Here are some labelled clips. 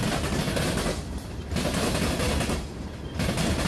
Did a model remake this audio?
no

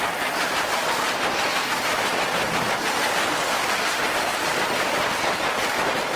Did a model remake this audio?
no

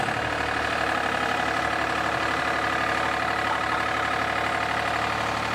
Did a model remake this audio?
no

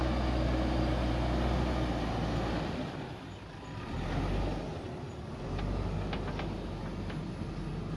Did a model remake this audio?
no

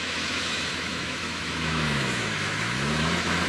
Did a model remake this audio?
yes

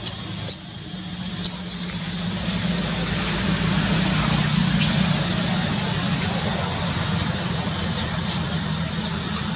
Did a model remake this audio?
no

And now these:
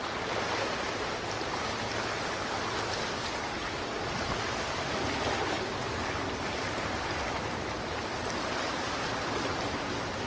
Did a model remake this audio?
no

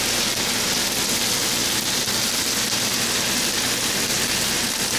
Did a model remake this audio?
no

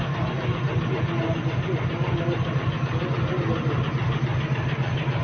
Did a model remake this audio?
no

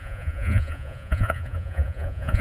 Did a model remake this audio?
yes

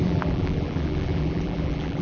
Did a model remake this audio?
yes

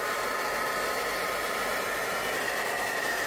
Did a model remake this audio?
no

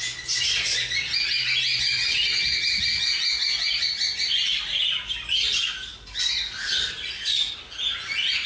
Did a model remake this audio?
no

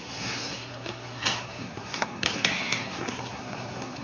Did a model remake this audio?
yes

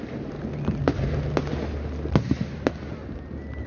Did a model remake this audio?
no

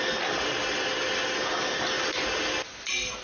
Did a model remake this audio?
no